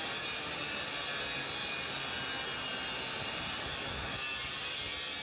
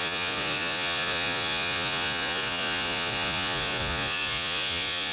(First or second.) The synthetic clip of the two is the second